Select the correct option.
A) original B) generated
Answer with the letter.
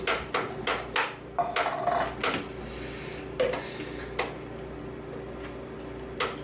A